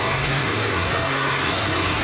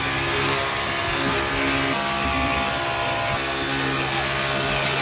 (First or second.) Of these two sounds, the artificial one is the first